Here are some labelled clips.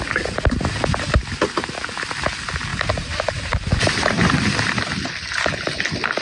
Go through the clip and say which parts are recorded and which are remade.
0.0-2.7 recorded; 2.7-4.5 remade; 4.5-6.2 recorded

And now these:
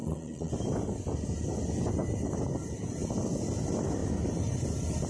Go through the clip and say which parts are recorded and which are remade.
0.0-0.5 remade; 0.5-5.1 recorded

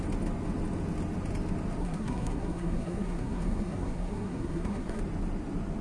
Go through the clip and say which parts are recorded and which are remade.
0.0-1.8 recorded; 1.8-5.0 remade; 5.0-5.8 recorded